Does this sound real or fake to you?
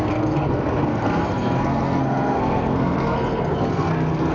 fake